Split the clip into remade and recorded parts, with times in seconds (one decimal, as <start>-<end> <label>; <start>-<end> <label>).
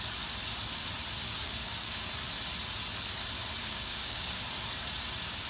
0.0-1.2 recorded; 1.2-2.1 remade; 2.1-3.6 recorded; 3.6-4.4 remade; 4.4-5.5 recorded